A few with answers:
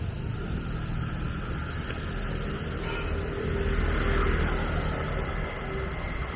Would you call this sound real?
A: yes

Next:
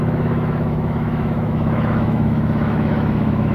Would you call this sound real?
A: no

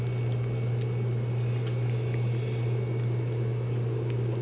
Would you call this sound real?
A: yes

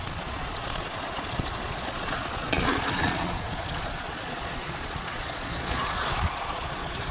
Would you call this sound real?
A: no